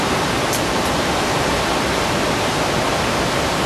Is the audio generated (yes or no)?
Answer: no